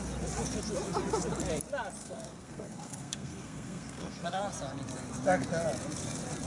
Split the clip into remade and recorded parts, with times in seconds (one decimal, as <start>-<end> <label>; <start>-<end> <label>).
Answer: 0.0-2.0 recorded; 2.0-4.4 remade; 4.4-6.5 recorded